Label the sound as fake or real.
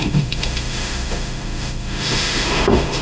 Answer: fake